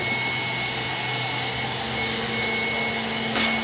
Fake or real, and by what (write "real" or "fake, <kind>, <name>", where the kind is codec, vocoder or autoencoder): real